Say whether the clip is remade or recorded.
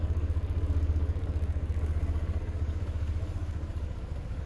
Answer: remade